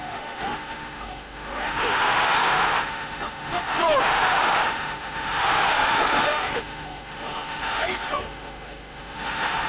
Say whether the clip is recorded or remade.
remade